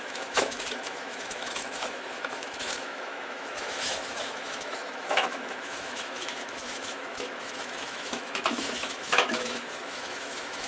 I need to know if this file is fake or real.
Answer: fake